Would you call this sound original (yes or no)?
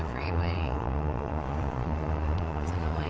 no